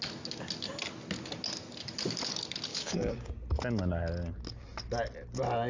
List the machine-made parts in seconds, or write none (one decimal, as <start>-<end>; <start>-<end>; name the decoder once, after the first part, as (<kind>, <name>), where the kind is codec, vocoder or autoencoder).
2.7-3.3 (codec, DAC)

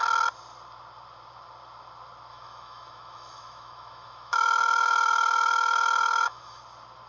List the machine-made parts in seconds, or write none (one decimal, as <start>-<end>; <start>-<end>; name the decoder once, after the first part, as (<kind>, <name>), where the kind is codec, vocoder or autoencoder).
2.3-6.6 (autoencoder, DAC-VAE)

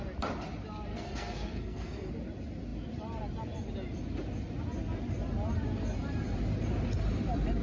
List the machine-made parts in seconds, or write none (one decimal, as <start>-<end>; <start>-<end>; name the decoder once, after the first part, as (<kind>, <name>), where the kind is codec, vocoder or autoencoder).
0.9-2.1 (codec, SNAC)